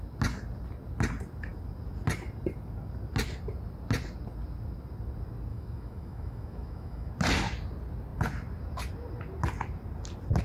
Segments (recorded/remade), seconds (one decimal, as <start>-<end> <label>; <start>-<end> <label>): 0.0-5.5 recorded; 5.5-7.1 remade; 7.1-10.4 recorded

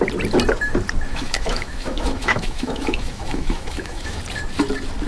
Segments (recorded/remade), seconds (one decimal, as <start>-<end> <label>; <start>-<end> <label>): 0.0-1.1 recorded; 1.1-4.2 remade; 4.2-5.1 recorded

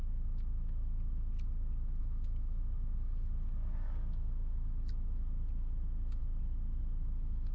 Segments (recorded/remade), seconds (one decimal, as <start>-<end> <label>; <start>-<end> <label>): 0.0-2.0 recorded; 2.0-2.6 remade; 2.6-7.5 recorded